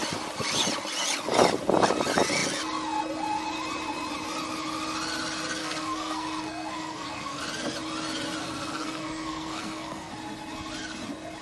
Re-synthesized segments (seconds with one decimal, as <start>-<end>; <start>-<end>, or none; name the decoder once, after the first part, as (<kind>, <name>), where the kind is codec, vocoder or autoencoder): 5.6-7.4 (codec, SNAC); 8.4-10.1